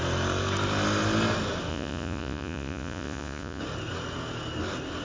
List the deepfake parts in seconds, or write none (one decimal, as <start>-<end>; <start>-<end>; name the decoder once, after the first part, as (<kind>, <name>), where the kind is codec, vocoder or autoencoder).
1.7-3.6 (vocoder, Vocos)